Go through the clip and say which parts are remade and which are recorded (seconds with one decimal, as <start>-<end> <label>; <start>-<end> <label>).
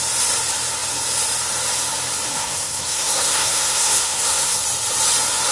0.0-2.3 recorded; 2.3-4.6 remade; 4.6-5.5 recorded